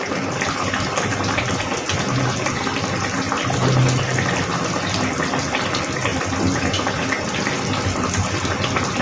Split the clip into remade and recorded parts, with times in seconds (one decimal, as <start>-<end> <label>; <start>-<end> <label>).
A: 0.0-9.0 recorded